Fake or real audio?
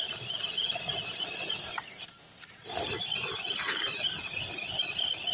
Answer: real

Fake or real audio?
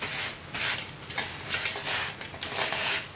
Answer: real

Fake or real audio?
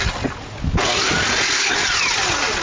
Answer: real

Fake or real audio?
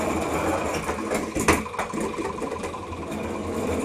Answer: real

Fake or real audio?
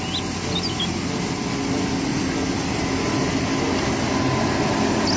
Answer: real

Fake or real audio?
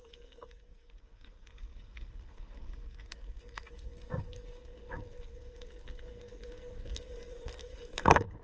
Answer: fake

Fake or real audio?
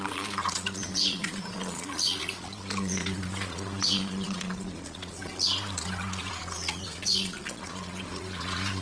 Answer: fake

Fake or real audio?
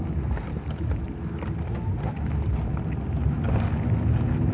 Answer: real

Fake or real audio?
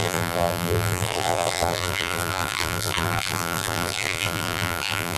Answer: fake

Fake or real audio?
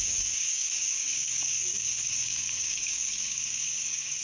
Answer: fake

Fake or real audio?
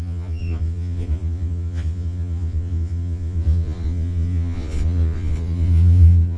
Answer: fake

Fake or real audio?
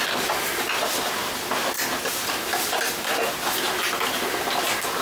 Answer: real